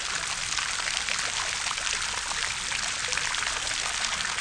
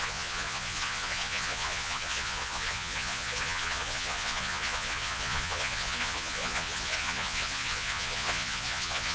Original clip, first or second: first